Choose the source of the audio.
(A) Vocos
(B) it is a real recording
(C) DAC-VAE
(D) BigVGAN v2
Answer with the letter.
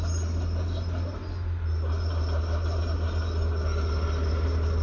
B